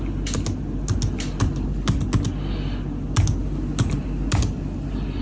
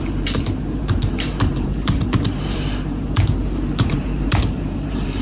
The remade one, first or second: second